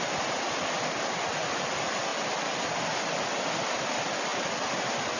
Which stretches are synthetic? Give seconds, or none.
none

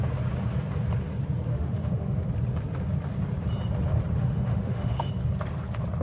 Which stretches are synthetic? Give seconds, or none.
1.5-2.2 (autoencoder, DAC-VAE); 4.2-5.1

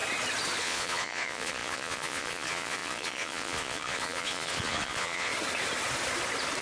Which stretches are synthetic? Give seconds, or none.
0.6-5.3 (vocoder, Vocos)

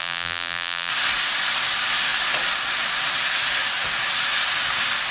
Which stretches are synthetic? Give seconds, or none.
0.0-0.9 (vocoder, BigVGAN v2)

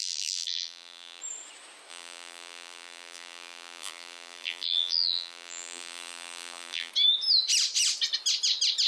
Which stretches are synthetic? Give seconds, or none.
0.0-1.2 (vocoder, BigVGAN v2); 1.9-6.9

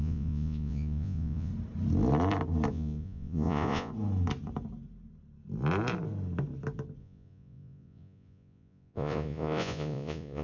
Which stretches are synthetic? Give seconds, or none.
0.0-1.5 (vocoder, Vocos); 2.7-3.9; 7.0-10.4

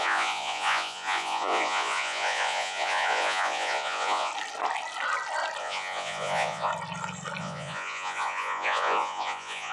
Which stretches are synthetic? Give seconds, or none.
0.0-4.3 (vocoder, Vocos); 5.6-6.7; 7.4-9.7